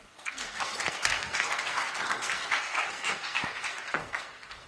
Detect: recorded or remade remade